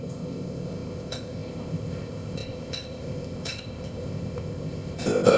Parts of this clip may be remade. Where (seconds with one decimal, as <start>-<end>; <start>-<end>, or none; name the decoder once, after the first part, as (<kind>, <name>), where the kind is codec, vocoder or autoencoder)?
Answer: 0.0-5.4 (codec, ZipCodec)

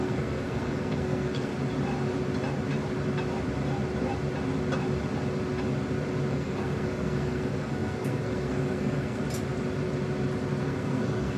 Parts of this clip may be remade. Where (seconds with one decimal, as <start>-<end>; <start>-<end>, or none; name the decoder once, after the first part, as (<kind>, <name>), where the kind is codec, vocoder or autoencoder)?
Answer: 0.0-1.5 (codec, SNAC); 6.3-9.2; 10.6-11.4

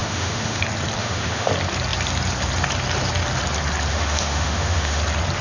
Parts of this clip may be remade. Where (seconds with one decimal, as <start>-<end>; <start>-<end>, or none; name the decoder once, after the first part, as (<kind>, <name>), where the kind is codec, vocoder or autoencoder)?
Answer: 0.0-0.6 (autoencoder, DAC-VAE); 1.0-1.5; 3.9-5.0

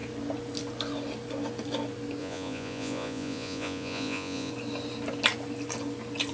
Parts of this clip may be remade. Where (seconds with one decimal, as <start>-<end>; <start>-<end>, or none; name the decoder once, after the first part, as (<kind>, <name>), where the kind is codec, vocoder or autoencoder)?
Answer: 2.2-4.5 (vocoder, Vocos)